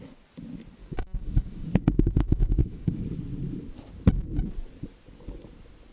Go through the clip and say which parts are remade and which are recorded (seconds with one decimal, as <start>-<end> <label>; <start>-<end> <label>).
0.0-0.8 recorded; 0.8-3.0 remade; 3.0-5.9 recorded